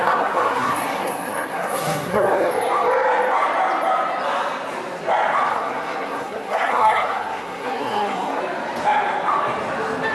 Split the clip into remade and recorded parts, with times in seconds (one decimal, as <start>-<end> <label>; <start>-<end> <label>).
0.0-2.5 remade; 2.5-5.5 recorded; 5.5-8.4 remade; 8.4-10.1 recorded